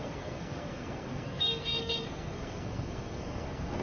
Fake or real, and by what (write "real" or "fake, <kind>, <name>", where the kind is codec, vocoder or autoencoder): fake, codec, SNAC